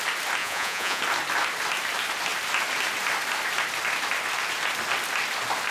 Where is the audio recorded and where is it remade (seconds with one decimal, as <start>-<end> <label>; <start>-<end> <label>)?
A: 0.0-0.4 recorded; 0.4-1.0 remade; 1.0-5.7 recorded